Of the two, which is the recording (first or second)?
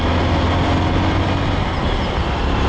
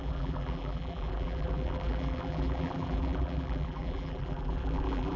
first